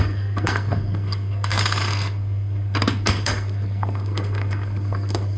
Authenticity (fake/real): fake